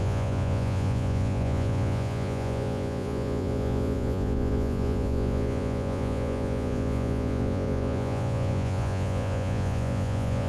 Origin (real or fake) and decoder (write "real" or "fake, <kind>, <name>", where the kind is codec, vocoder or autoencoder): fake, vocoder, Vocos